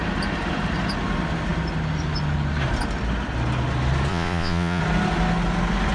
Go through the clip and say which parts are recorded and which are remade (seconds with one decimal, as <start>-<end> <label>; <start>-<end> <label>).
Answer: 0.0-4.1 recorded; 4.1-4.8 remade; 4.8-5.9 recorded